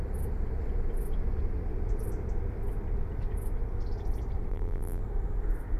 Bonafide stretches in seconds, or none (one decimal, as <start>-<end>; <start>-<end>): 0.0-4.5; 5.0-5.8